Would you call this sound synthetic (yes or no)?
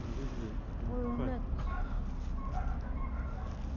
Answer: no